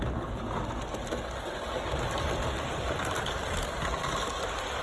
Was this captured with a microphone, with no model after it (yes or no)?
yes